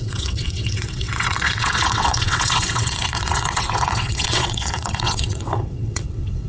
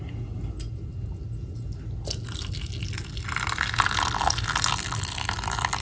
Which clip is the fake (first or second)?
first